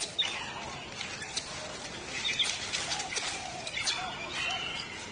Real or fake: real